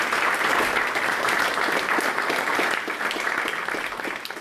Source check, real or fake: real